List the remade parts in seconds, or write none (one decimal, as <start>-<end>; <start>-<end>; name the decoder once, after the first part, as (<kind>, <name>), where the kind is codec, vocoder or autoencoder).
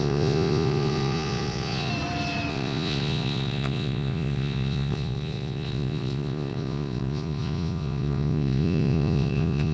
0.0-1.9 (vocoder, Vocos); 2.5-9.7